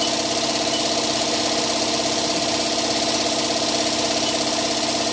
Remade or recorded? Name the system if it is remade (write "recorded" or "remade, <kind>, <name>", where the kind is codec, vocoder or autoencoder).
recorded